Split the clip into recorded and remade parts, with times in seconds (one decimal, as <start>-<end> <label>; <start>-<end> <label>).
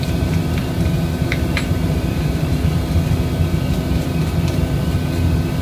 0.0-0.6 recorded; 0.6-2.7 remade; 2.7-5.6 recorded